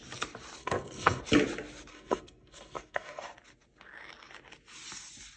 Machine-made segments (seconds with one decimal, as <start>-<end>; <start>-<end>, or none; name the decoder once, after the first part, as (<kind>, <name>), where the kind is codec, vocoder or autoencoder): 0.6-1.2 (codec, SNAC); 1.9-3.2